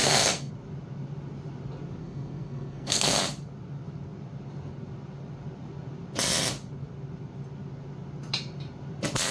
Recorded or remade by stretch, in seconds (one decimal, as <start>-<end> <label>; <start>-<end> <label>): 0.0-0.5 remade; 0.5-2.0 recorded; 2.0-3.2 remade; 3.2-9.3 recorded